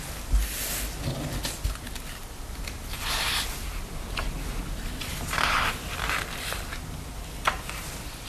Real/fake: real